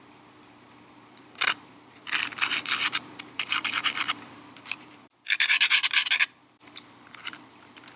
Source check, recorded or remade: remade